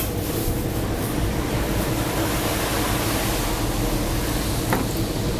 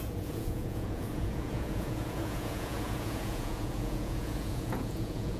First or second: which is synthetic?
second